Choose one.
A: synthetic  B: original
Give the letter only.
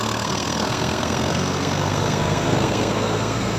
A